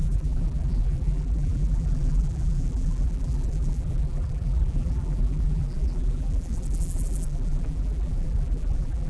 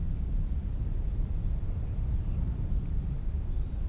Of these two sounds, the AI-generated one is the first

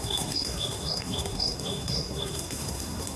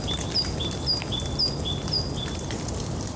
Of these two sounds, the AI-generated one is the first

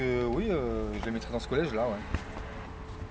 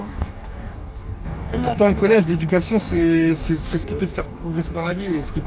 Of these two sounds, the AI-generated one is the second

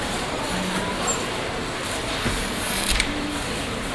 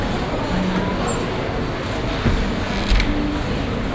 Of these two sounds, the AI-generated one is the first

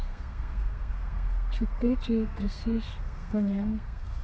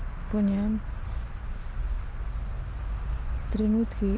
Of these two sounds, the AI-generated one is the first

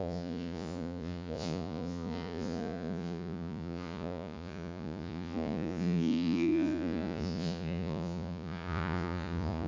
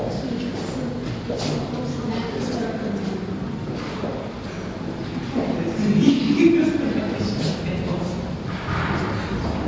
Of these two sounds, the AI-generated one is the first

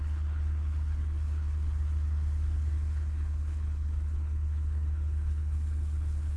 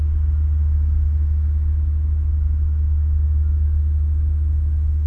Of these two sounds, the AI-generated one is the first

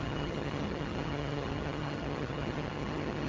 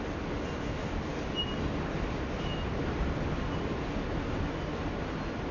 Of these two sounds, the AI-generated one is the first